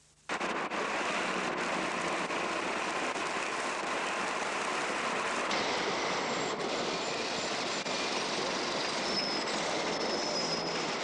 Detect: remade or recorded recorded